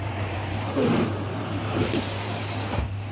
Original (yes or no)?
no